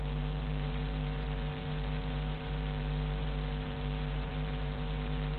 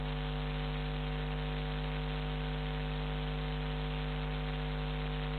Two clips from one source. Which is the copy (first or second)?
first